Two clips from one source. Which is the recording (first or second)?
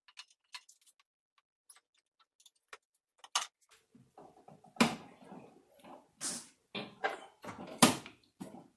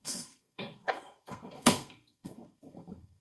first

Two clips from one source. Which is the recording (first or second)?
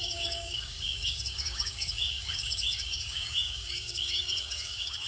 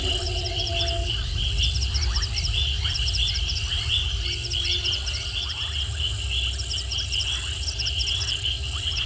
second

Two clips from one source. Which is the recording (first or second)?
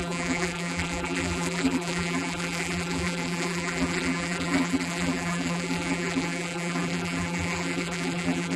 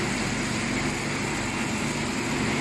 second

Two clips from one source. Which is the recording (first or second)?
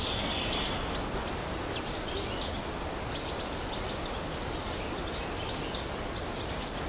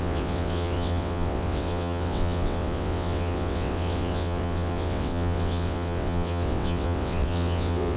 first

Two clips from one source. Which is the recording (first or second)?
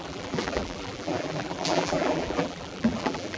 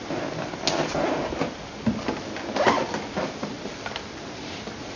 second